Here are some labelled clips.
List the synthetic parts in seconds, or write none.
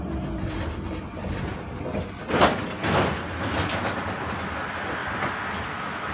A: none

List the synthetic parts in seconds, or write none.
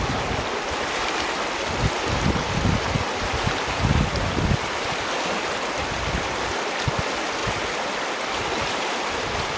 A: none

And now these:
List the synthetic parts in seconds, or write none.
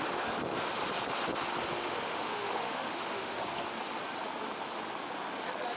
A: 1.8-3.4